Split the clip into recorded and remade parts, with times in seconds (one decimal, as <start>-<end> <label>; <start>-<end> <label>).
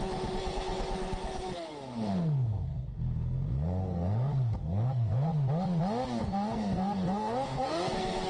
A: 0.0-5.3 remade; 5.3-6.2 recorded; 6.2-8.3 remade